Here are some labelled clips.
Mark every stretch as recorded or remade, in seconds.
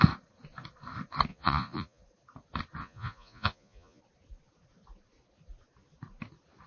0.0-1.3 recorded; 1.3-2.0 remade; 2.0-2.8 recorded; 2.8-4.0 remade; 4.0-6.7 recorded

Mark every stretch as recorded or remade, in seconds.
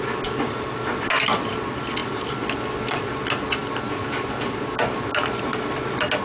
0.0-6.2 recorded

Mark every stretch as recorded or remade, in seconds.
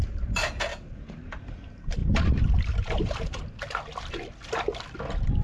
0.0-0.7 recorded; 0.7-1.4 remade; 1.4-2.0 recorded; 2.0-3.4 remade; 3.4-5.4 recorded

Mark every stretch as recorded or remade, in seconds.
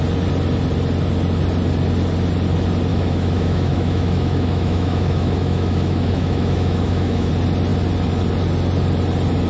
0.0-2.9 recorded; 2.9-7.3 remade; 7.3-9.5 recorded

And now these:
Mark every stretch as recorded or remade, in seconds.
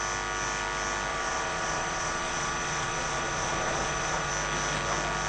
0.0-1.1 recorded; 1.1-4.3 remade; 4.3-5.3 recorded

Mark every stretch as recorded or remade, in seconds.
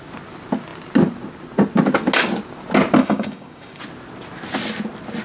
0.0-3.0 recorded; 3.0-3.8 remade; 3.8-5.2 recorded